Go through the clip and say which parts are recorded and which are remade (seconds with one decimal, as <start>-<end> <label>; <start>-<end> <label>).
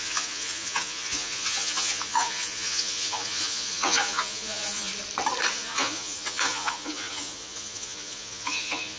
0.0-4.9 remade; 4.9-5.5 recorded; 5.5-9.0 remade